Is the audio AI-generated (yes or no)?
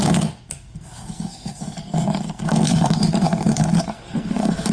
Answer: yes